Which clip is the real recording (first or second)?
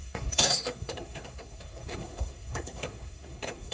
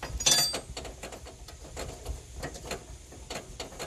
second